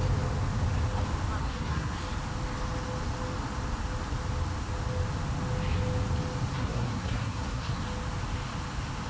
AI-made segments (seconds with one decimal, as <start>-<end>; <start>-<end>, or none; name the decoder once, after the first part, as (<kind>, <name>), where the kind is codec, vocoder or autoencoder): 1.4-1.9 (codec, SNAC); 6.5-7.8